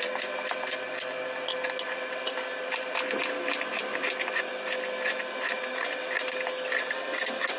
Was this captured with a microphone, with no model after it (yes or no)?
yes